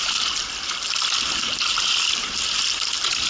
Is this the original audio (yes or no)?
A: yes